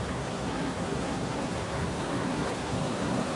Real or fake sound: fake